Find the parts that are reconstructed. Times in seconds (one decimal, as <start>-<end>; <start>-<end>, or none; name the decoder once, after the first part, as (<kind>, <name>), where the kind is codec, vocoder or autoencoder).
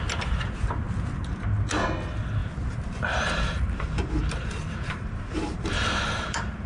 2.4-6.7 (vocoder, BigVGAN v2)